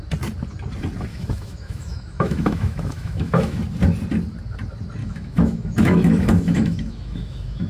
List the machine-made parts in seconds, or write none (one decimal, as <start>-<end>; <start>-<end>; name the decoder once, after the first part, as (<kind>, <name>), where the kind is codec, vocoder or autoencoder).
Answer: 1.1-3.6 (autoencoder, DAC-VAE); 5.0-7.7